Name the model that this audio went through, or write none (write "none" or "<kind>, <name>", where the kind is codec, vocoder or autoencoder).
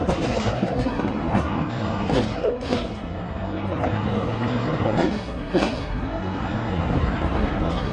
codec, SNAC